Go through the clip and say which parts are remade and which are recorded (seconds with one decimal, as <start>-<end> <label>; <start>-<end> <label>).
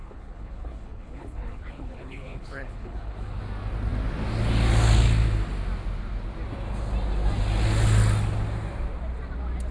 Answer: 0.0-3.4 remade; 3.4-9.7 recorded